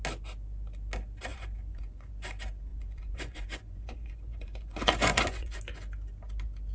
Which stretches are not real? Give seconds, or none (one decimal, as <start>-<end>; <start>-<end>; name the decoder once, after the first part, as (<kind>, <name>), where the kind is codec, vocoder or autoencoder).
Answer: 1.3-2.1 (vocoder, Vocos); 2.7-5.6